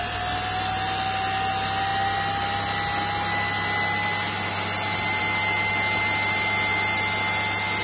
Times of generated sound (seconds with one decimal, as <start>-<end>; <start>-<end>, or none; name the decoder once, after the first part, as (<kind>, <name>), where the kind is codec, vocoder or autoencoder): none